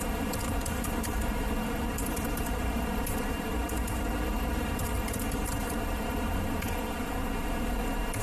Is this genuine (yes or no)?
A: no